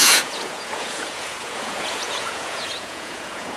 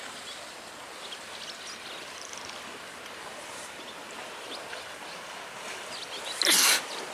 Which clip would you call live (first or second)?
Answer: second